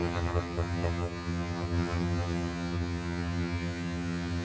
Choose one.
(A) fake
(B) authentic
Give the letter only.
A